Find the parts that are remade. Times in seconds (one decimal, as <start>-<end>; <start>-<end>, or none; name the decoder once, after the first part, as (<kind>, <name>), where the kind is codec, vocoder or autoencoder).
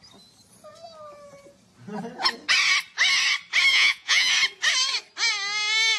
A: 3.7-4.3 (vocoder, Vocos)